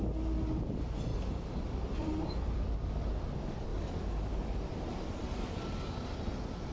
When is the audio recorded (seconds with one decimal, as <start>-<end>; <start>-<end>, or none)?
0.0-1.1; 3.0-4.7; 5.2-6.7